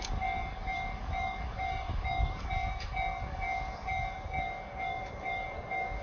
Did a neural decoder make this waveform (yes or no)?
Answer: yes